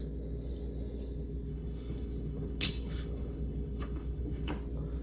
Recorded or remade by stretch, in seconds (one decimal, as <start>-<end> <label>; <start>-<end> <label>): 0.0-1.5 recorded; 1.5-4.5 remade; 4.5-5.0 recorded